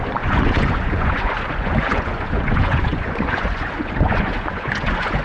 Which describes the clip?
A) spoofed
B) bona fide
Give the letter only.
A